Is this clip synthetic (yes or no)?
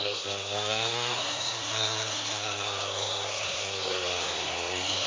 yes